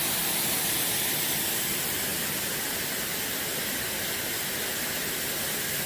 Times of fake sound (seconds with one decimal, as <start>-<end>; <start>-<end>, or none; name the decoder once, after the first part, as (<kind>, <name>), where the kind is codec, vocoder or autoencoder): none